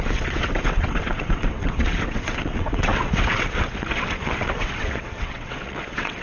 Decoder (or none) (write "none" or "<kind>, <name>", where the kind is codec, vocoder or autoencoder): vocoder, WaveNeXt